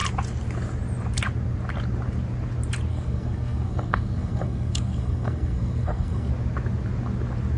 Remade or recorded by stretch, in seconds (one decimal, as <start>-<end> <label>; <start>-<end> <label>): 0.0-2.9 recorded; 2.9-6.3 remade; 6.3-7.6 recorded